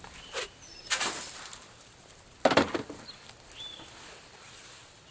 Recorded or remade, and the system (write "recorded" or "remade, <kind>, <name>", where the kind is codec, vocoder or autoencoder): recorded